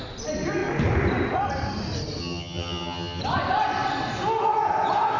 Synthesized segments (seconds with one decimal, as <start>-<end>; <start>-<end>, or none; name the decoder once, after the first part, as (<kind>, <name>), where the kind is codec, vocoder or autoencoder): 2.2-3.2 (vocoder, HiFi-GAN)